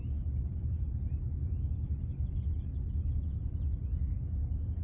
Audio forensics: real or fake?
real